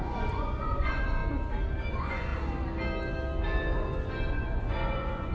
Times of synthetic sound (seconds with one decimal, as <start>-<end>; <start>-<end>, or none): 0.0-1.2; 1.9-2.3; 4.3-5.3